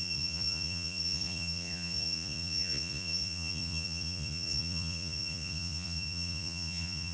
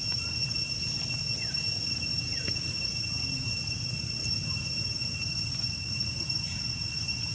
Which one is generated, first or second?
first